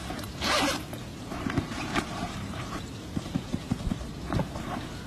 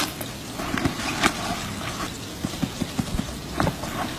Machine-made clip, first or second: first